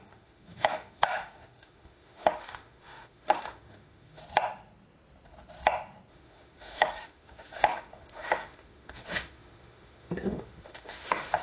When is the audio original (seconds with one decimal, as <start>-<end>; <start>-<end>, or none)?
4.2-6.1